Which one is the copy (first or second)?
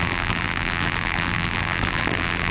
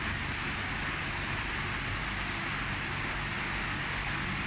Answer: first